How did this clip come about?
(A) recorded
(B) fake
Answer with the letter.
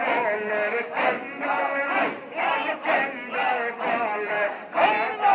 A